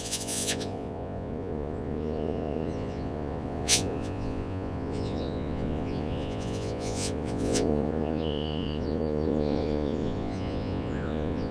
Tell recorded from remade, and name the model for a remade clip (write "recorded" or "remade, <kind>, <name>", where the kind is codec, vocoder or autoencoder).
remade, vocoder, Vocos